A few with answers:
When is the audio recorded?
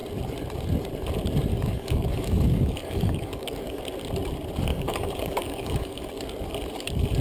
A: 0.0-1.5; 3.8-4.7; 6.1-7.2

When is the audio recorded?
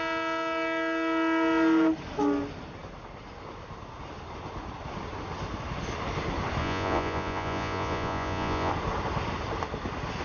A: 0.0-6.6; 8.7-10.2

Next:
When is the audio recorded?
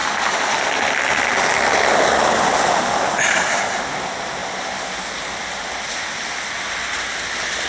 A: 0.0-7.7